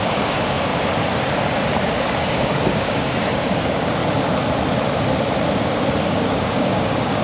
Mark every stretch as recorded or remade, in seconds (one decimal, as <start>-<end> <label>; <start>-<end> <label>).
0.0-0.7 remade; 0.7-2.0 recorded; 2.0-4.0 remade; 4.0-6.0 recorded; 6.0-7.2 remade